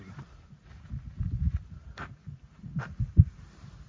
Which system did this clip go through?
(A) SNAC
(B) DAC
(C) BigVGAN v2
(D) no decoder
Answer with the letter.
D